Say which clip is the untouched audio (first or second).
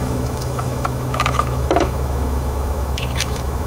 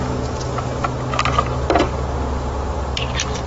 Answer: second